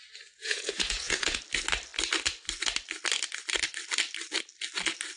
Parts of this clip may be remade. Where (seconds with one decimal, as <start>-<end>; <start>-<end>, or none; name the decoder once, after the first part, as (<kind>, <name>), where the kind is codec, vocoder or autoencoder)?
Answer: 0.4-1.4 (vocoder, Vocos)